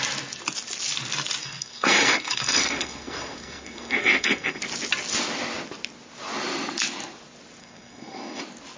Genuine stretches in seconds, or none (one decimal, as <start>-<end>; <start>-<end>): 0.0-1.4; 4.6-7.6; 8.4-8.8